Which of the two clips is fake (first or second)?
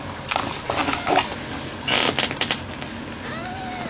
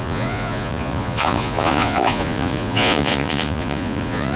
second